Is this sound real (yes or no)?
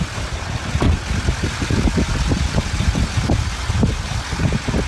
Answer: yes